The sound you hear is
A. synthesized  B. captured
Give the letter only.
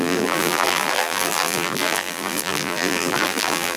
A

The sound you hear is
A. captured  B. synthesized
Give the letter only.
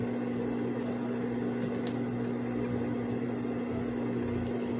A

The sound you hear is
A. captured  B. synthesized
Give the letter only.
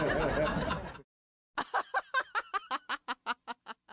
A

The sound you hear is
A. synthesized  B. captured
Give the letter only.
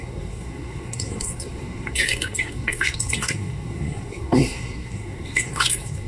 A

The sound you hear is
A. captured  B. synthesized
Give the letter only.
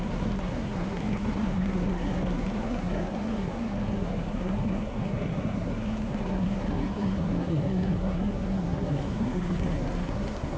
B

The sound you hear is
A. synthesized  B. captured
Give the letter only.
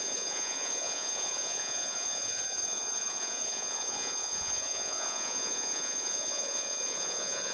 A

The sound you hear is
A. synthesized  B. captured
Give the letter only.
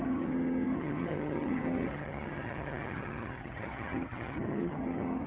A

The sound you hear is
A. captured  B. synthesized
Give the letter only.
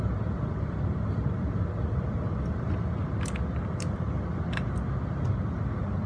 A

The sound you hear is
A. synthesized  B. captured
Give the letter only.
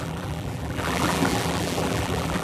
A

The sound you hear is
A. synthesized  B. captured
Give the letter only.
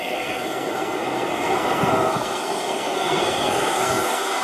A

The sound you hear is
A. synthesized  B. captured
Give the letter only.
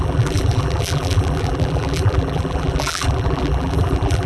A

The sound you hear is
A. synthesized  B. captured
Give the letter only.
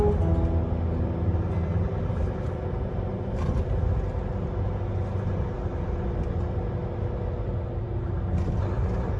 B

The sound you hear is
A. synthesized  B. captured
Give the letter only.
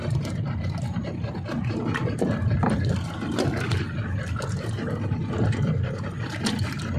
B